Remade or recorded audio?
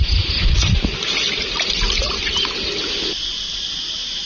recorded